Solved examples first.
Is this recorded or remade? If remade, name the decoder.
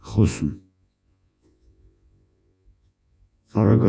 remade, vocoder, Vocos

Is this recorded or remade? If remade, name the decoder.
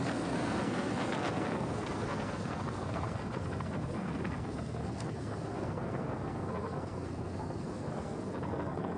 remade, codec, SNAC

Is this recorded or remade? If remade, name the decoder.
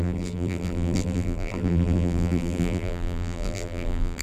remade, vocoder, BigVGAN v2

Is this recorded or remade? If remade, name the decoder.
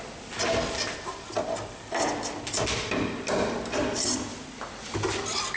recorded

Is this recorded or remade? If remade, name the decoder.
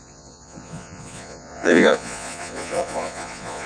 remade, vocoder, Vocos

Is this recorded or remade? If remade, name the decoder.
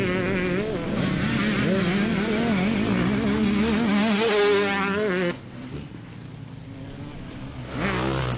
recorded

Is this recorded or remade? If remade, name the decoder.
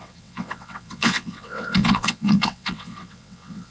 remade, vocoder, WaveNeXt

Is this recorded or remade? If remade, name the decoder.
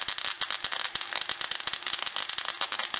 recorded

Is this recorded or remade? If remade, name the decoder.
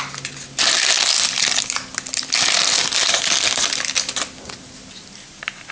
recorded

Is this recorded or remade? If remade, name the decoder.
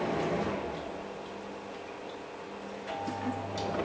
recorded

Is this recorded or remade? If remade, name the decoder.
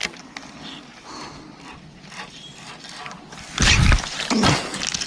recorded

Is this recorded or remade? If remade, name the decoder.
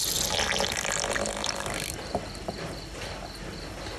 recorded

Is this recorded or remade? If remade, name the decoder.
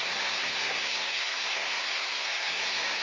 remade, codec, SNAC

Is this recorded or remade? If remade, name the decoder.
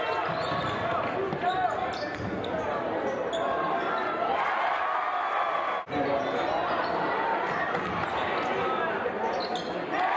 recorded